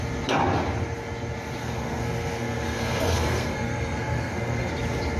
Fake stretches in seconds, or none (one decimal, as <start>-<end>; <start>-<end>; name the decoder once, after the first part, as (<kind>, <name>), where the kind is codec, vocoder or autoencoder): 1.6-4.7 (codec, SNAC)